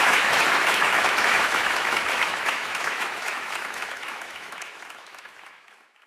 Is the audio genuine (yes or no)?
no